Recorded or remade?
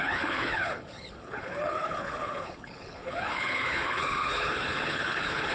remade